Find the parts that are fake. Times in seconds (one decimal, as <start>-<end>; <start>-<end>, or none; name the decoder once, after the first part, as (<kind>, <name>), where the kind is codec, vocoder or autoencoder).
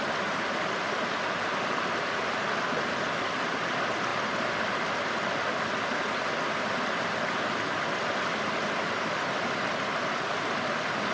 none